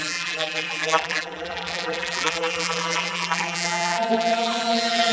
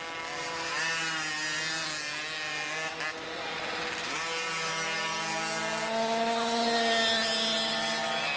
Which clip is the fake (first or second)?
first